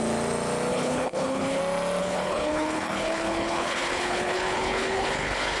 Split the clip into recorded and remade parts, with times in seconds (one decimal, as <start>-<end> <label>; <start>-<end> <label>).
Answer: 0.0-0.7 recorded; 0.7-1.6 remade; 1.6-2.0 recorded; 2.0-5.6 remade